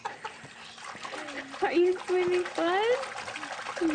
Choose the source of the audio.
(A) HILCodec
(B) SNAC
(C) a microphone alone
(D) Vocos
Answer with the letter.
C